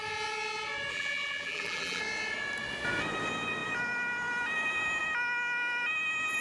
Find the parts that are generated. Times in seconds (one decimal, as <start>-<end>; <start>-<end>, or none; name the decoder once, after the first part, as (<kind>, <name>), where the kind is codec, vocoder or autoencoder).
0.9-2.0 (vocoder, BigVGAN v2)